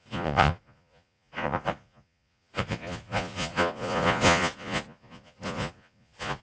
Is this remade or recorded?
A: remade